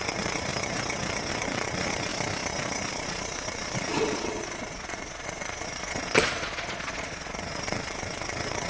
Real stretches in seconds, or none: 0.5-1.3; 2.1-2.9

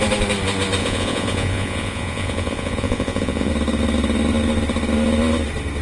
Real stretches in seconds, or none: 0.0-0.8; 3.5-5.8